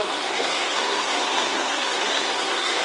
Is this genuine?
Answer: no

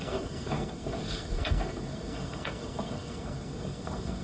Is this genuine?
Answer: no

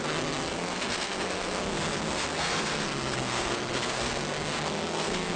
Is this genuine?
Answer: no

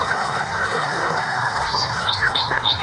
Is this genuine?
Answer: no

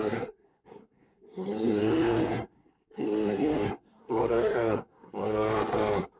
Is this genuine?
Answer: no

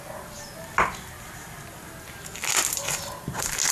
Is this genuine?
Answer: yes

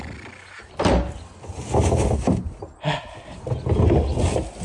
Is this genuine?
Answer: yes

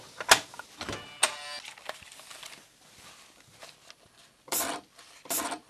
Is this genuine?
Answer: yes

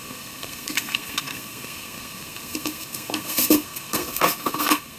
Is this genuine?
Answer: no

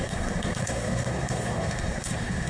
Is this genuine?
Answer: no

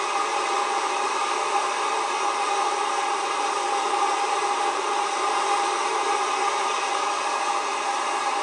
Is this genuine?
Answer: yes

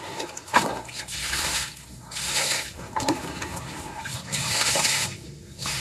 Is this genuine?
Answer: no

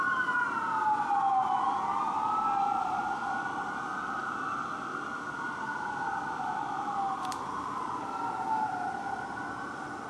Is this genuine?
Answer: yes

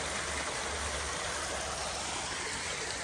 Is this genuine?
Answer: yes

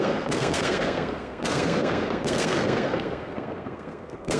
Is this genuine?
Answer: no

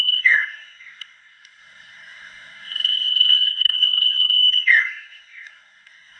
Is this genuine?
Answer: no